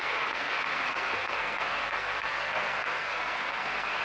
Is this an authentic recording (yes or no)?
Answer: no